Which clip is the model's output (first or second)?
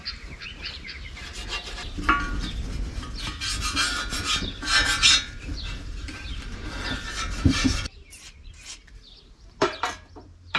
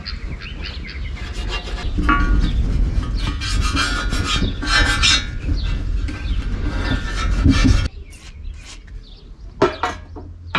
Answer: first